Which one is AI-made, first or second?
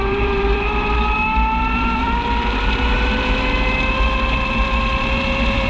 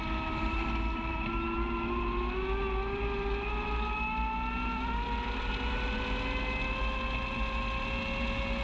first